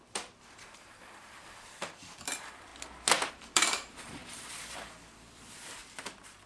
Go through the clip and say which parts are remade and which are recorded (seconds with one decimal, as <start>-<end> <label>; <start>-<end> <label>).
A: 0.0-2.7 remade; 2.7-3.3 recorded; 3.3-5.8 remade; 5.8-6.5 recorded